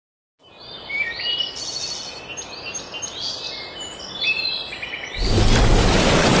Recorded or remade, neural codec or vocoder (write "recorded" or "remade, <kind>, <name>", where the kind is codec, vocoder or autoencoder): recorded